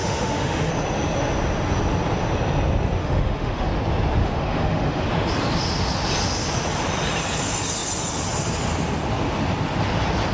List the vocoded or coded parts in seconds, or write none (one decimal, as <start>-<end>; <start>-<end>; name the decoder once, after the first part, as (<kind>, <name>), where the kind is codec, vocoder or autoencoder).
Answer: 0.0-0.7 (autoencoder, DAC-VAE); 3.0-3.7; 4.2-5.1